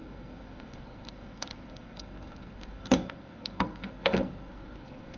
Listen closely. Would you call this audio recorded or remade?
remade